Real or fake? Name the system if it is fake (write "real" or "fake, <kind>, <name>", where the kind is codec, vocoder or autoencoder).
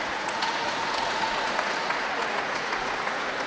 fake, vocoder, Vocos